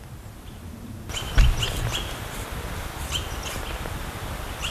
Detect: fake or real real